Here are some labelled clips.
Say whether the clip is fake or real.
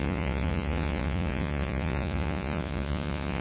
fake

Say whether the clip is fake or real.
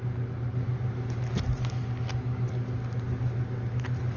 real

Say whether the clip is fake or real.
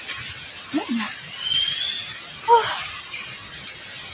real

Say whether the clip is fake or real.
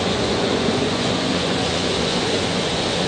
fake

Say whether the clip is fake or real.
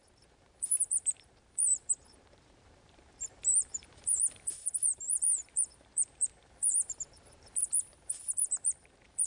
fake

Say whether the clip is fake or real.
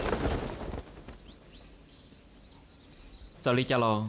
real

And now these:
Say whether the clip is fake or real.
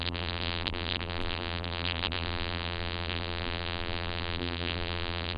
fake